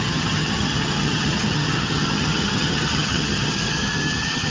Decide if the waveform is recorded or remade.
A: remade